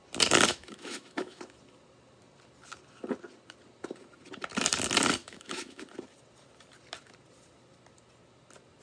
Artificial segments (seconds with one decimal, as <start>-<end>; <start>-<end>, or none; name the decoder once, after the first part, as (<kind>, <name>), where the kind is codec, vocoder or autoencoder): 0.5-1.4 (autoencoder, DAC-VAE); 5.2-5.8